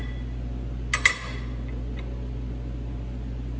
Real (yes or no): yes